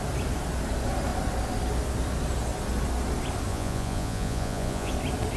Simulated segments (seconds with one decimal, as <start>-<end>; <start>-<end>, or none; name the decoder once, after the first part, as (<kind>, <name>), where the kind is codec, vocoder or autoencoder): 3.5-4.9 (vocoder, Vocos)